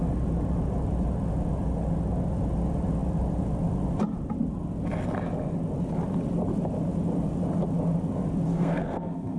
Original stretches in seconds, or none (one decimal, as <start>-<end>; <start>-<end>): 0.0-8.5